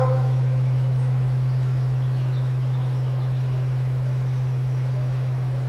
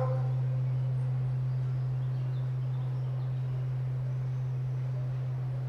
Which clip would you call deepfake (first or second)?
first